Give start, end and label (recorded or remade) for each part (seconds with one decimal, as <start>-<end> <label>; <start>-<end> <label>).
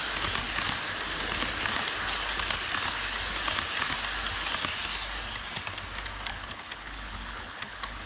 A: 0.0-6.3 recorded; 6.3-8.1 remade